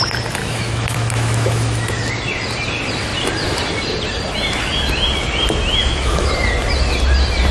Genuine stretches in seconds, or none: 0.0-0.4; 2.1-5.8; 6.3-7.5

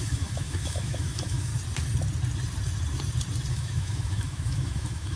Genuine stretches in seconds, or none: 1.5-3.5